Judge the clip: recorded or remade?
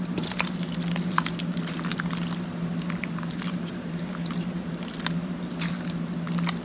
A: recorded